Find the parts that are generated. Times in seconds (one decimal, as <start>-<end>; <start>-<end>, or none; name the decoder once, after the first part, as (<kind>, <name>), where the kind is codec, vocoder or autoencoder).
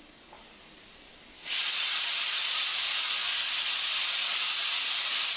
1.4-2.8 (vocoder, Vocos); 4.2-4.7